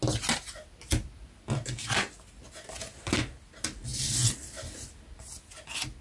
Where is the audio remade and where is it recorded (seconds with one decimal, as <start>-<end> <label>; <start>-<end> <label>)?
0.0-6.0 recorded